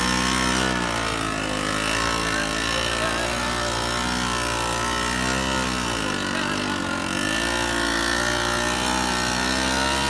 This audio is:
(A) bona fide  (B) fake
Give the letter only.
A